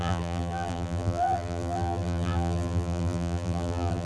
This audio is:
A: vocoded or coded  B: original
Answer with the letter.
A